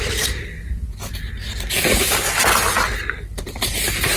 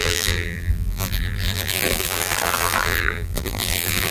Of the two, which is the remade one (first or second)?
second